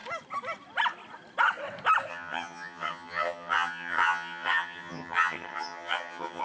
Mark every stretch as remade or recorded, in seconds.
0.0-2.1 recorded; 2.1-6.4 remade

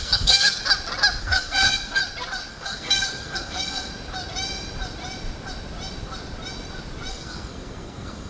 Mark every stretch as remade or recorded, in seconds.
0.0-0.6 remade; 0.6-1.2 recorded; 1.2-2.0 remade; 2.0-2.5 recorded; 2.5-3.9 remade; 3.9-7.1 recorded; 7.1-8.3 remade